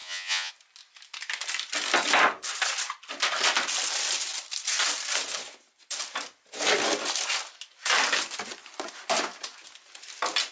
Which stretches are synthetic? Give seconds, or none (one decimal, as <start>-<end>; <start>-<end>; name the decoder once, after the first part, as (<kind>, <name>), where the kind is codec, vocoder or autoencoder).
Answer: 0.0-0.5 (vocoder, Vocos)